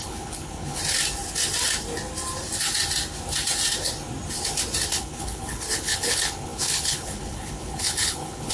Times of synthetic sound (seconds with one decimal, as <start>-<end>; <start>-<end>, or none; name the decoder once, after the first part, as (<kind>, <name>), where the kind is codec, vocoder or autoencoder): 0.0-0.8 (codec, HILCodec); 4.9-8.5